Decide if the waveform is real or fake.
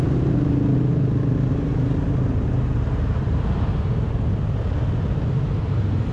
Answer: real